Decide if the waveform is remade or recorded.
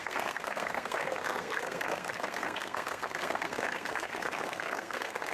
remade